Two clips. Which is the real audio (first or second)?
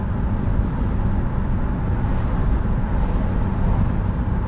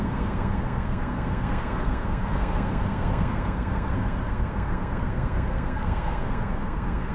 first